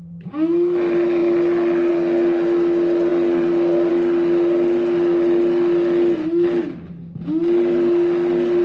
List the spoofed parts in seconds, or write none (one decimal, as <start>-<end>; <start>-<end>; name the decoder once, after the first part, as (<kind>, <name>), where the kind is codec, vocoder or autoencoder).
none